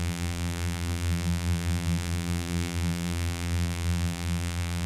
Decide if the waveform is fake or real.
fake